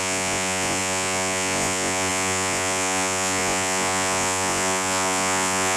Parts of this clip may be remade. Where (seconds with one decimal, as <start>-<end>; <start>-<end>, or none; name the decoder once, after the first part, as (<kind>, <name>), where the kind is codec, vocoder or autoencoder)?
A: 0.0-5.8 (vocoder, Vocos)